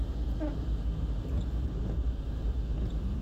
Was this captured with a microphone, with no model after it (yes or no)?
yes